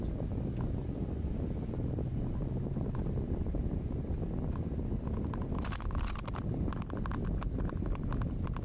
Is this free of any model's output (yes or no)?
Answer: yes